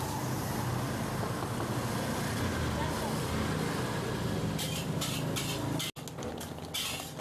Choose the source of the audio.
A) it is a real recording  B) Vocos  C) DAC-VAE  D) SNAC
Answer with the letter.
A